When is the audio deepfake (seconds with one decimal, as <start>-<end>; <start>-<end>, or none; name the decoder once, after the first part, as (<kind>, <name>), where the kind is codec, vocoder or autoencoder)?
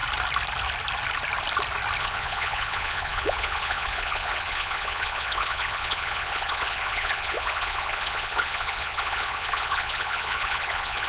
2.0-11.1 (vocoder, Vocos)